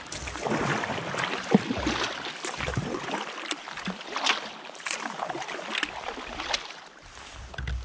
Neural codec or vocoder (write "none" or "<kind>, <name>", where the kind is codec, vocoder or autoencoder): none